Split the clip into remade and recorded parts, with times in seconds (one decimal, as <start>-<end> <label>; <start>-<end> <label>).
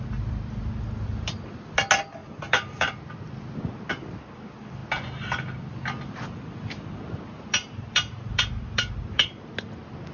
0.0-2.2 recorded; 2.2-3.0 remade; 3.0-7.6 recorded; 7.6-9.5 remade; 9.5-10.1 recorded